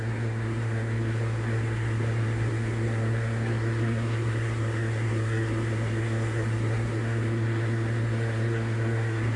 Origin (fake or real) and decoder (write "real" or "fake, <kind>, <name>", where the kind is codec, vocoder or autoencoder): fake, codec, SNAC